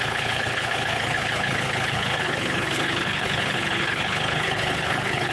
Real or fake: fake